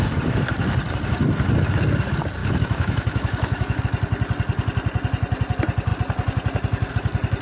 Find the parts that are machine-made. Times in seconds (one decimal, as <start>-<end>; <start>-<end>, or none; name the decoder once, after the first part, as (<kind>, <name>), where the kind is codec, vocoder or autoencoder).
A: 2.4-3.8 (autoencoder, DAC-VAE)